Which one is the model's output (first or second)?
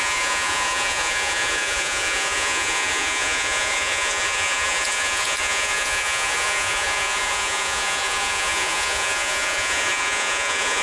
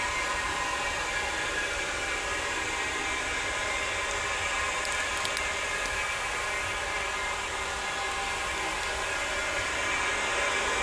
first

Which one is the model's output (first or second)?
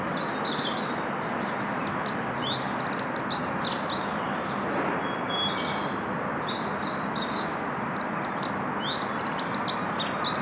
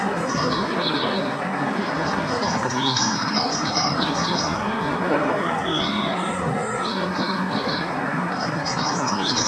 second